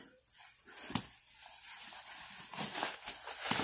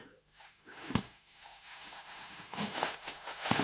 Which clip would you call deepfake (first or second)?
second